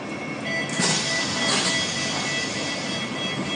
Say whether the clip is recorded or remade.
recorded